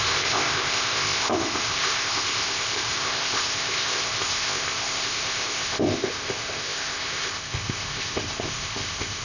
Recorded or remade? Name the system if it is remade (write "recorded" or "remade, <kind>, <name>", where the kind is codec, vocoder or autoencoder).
remade, codec, ZipCodec